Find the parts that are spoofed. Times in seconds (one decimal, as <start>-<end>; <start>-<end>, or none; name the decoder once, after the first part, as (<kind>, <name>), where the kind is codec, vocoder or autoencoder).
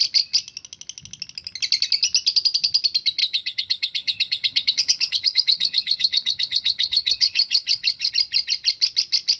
3.2-8.1 (codec, HILCodec)